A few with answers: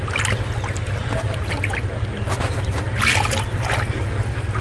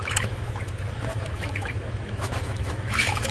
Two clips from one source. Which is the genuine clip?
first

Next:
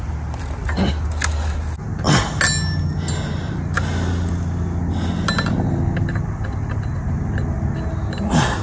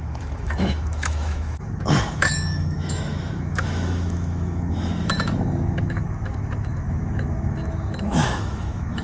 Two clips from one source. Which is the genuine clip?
first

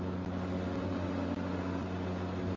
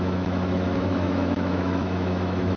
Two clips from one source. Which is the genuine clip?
first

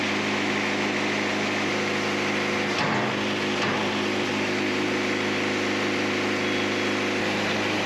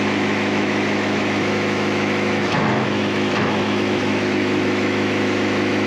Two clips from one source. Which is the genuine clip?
first